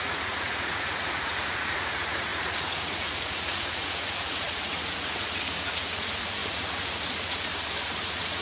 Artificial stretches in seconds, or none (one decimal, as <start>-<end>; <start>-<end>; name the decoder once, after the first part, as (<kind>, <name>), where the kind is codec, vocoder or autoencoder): 0.0-7.5 (vocoder, Vocos); 8.0-8.4